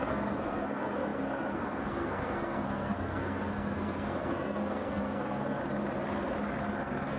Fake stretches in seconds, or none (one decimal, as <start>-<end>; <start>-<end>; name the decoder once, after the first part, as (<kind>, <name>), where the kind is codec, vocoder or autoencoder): 0.0-5.6 (codec, SNAC); 6.8-7.2

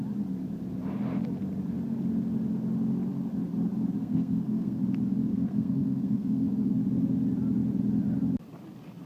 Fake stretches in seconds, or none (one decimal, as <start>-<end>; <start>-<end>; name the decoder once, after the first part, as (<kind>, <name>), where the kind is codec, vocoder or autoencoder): 4.0-4.8 (codec, SNAC); 5.3-6.8

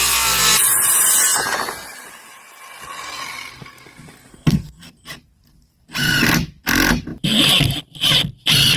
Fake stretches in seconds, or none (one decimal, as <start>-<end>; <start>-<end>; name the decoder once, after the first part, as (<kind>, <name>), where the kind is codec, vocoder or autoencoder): 4.3-4.9 (codec, SNAC)